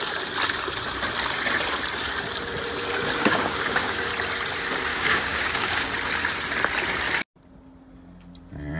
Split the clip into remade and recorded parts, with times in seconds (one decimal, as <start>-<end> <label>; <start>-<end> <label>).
0.0-3.2 recorded; 3.2-4.1 remade; 4.1-4.9 recorded; 4.9-5.9 remade; 5.9-8.8 recorded